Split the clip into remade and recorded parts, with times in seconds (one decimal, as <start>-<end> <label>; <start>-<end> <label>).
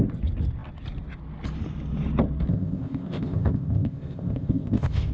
0.0-2.5 recorded; 2.5-5.1 remade